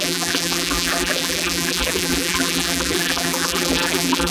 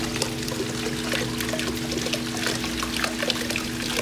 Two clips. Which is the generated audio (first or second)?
first